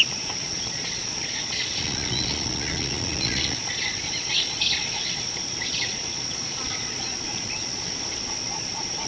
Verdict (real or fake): fake